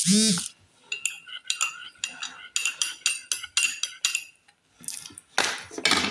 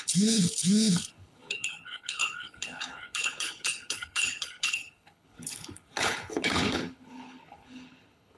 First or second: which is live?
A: first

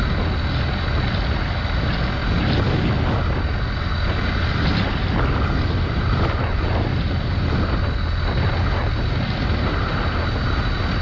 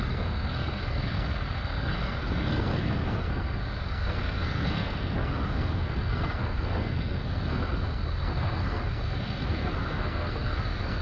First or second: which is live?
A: first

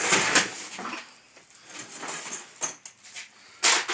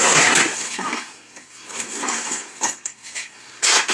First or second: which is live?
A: first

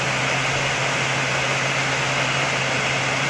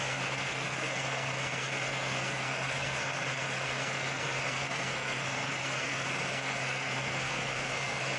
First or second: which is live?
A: first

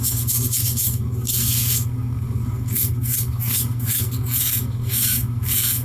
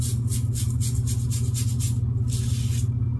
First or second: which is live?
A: second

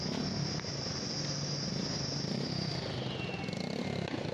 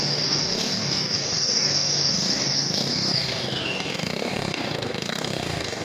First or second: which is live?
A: first